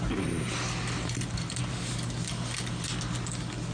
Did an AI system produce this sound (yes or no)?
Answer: no